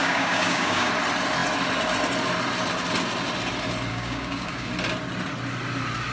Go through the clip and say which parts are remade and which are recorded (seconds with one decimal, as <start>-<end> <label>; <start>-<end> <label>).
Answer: 0.0-0.9 remade; 0.9-3.9 recorded; 3.9-4.7 remade; 4.7-6.1 recorded